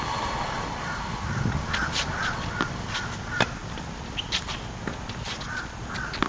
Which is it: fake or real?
real